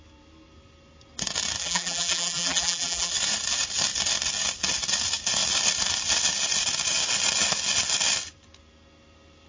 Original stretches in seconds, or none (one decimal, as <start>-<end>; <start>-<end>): 0.0-1.6; 3.1-9.5